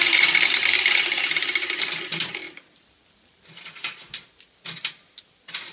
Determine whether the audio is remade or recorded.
recorded